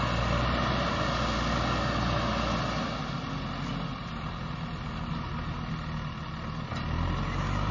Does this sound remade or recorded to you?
recorded